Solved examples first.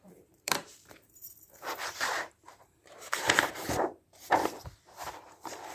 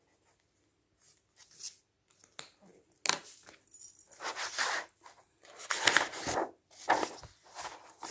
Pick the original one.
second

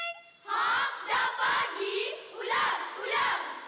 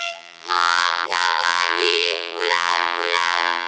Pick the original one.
first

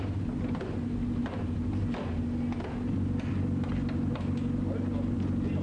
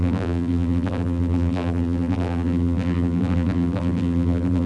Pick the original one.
first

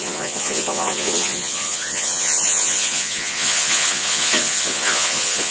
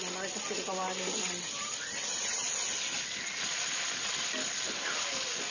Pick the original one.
second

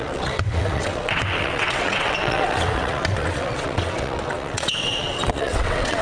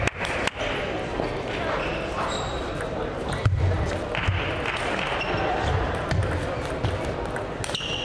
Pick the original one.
second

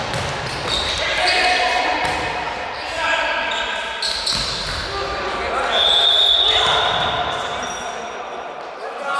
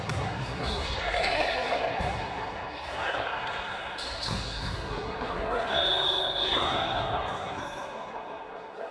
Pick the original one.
first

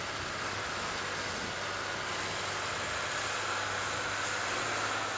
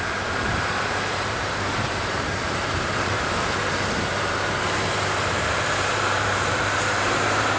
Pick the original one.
first